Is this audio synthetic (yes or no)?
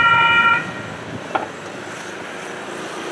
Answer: no